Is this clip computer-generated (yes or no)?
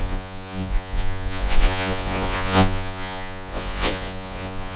yes